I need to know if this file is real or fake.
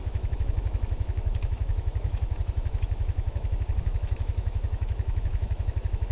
fake